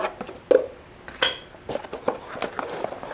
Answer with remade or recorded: recorded